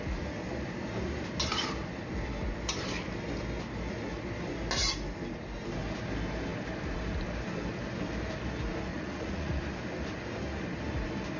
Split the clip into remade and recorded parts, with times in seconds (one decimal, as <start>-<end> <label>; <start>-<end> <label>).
0.0-8.9 recorded; 8.9-9.6 remade; 9.6-11.4 recorded